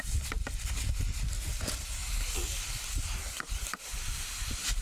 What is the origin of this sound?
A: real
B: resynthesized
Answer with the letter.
A